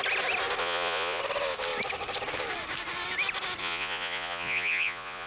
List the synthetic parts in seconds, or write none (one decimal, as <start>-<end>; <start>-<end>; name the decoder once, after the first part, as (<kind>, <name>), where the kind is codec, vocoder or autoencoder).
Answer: 0.6-1.2 (vocoder, Vocos); 3.6-5.3